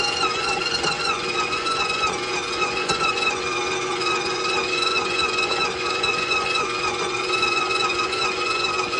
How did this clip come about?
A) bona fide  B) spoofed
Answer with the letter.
B